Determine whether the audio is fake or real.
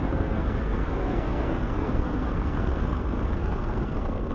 fake